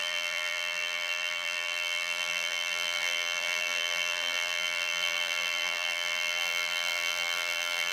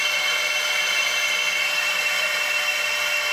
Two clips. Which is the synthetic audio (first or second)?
first